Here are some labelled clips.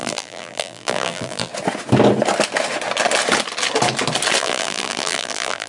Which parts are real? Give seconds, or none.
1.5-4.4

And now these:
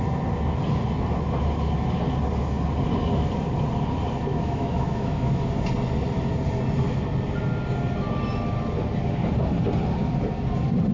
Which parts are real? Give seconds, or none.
0.0-4.3; 5.5-10.9

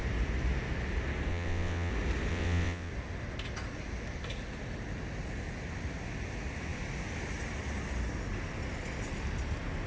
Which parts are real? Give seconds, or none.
0.0-1.3; 1.9-2.3; 2.9-9.9

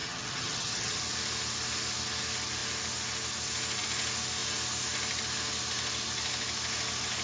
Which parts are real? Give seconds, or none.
1.0-7.2

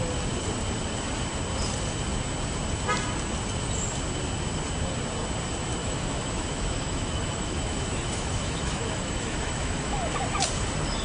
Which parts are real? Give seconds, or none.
0.0-5.8; 10.0-11.0

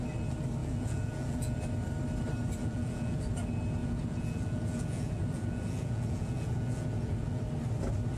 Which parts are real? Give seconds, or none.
0.0-0.6; 1.6-2.6; 3.2-3.8; 7.4-8.2